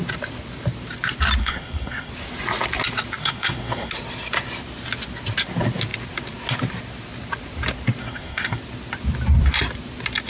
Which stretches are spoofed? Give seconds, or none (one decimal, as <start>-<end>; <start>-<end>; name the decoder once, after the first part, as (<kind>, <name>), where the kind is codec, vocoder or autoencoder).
1.4-2.1 (codec, SNAC); 3.2-3.9; 8.0-8.6

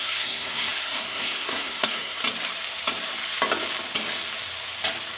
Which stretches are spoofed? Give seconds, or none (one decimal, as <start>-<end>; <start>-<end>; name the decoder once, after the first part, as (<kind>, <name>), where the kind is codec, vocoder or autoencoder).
0.0-2.2 (codec, SNAC)

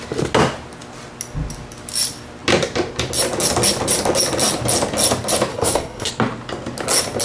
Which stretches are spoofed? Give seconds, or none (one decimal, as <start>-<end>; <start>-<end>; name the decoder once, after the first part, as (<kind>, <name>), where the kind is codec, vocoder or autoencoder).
5.5-6.1 (codec, SNAC)

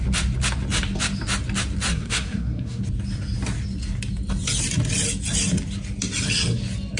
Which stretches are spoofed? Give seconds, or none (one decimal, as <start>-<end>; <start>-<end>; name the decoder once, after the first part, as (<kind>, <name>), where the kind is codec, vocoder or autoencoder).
1.9-2.8 (codec, SNAC)